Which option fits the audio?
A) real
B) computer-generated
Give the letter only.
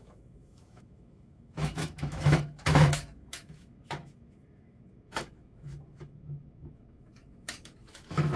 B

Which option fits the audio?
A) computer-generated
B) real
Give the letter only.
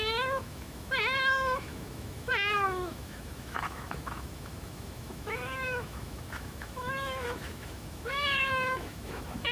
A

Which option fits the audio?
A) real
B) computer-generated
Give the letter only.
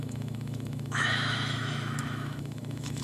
B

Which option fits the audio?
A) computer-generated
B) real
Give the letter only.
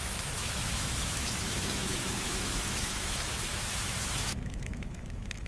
A